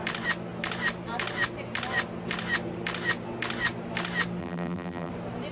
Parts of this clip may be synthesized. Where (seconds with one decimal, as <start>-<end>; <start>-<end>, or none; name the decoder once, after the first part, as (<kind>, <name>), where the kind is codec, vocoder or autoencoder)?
4.4-5.1 (vocoder, BigVGAN v2)